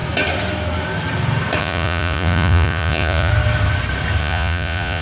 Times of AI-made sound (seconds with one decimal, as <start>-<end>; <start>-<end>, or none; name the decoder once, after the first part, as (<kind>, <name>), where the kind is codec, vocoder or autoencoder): 1.6-3.3 (vocoder, Vocos); 4.2-5.0